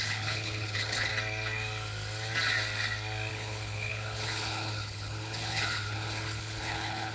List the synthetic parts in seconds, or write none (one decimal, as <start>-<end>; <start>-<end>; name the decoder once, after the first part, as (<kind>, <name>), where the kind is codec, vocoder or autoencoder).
0.0-1.1 (codec, HILCodec); 3.3-7.1